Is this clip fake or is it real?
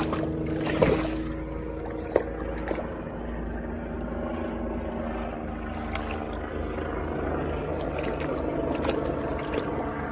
real